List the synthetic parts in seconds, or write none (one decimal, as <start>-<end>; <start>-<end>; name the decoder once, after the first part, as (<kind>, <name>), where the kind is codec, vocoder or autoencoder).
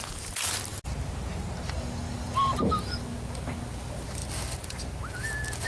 none